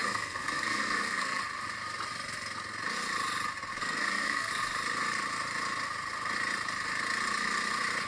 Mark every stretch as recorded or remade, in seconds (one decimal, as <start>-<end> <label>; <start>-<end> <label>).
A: 0.0-1.4 remade; 1.4-3.8 recorded; 3.8-4.5 remade; 4.5-8.1 recorded